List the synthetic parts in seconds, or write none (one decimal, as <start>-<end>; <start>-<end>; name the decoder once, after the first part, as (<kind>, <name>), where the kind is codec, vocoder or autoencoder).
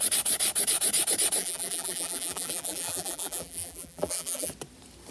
1.4-4.5 (vocoder, BigVGAN v2)